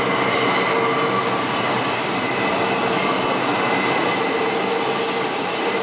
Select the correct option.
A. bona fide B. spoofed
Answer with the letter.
A